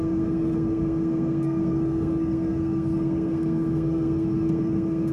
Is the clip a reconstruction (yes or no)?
yes